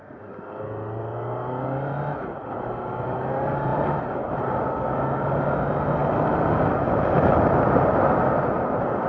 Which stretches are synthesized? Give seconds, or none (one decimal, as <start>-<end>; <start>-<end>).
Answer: none